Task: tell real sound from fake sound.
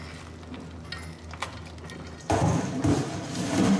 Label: real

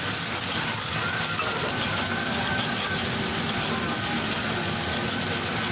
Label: real